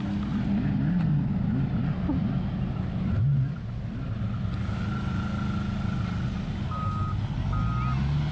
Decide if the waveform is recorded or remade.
recorded